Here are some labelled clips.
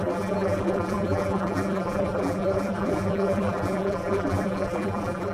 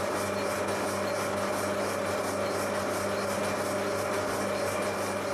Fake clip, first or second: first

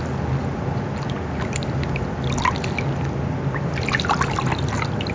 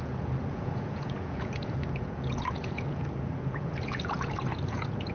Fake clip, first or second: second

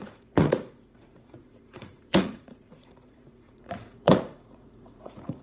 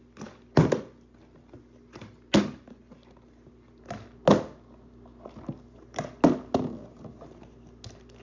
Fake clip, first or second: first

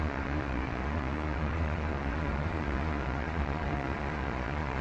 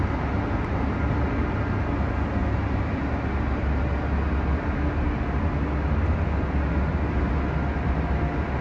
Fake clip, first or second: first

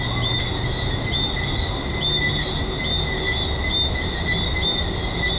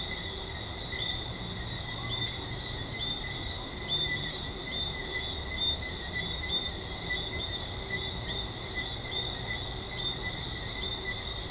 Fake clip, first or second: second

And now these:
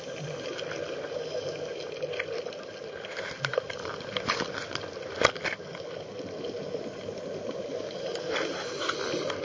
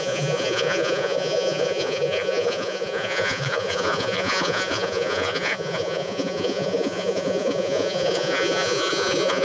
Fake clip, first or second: second